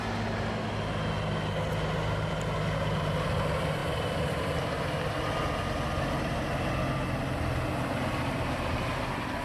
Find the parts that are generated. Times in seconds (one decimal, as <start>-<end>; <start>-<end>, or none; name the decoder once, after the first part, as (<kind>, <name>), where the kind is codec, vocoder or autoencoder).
none